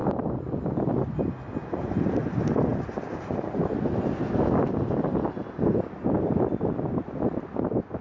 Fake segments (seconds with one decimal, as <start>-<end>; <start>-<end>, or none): 0.0-1.1